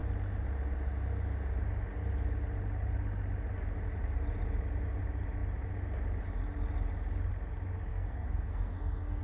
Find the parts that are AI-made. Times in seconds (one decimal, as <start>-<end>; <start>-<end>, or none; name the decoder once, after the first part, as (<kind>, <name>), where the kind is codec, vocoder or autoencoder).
7.9-9.2 (codec, SNAC)